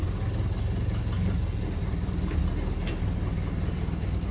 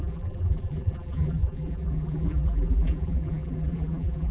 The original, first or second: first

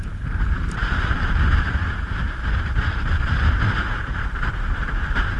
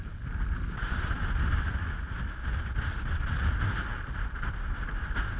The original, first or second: second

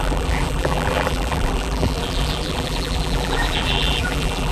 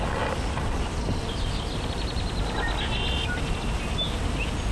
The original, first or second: second